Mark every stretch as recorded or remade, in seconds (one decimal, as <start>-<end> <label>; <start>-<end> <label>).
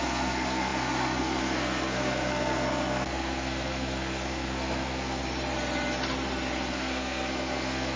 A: 0.0-5.2 remade; 5.2-6.7 recorded; 6.7-8.0 remade